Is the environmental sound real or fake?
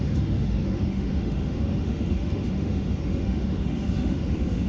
fake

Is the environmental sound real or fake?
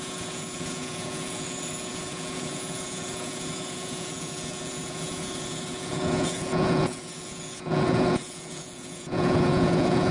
fake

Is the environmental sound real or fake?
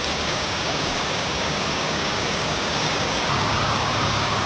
fake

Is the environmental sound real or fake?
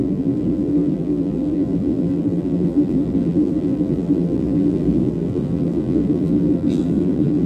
fake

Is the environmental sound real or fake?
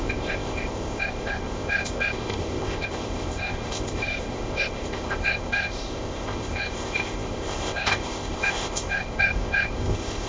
fake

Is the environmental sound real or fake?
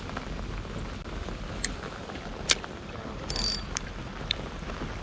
real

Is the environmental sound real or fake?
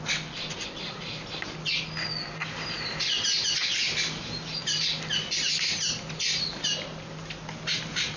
real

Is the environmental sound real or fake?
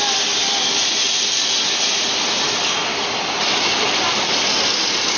real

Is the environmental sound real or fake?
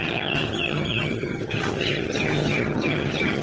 fake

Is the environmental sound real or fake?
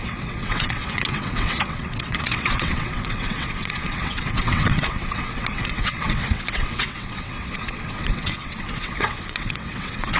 fake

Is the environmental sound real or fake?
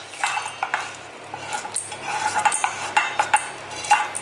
real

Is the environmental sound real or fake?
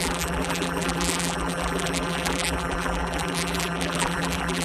fake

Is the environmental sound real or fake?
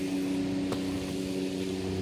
real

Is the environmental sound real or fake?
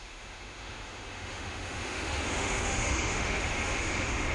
fake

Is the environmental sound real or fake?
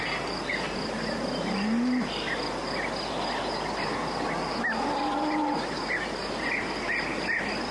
real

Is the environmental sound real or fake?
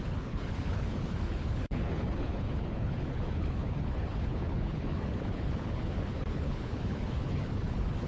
fake